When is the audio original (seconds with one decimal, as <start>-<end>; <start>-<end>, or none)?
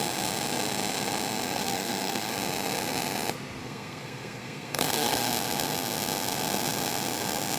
0.0-1.6; 2.3-3.6; 5.3-7.6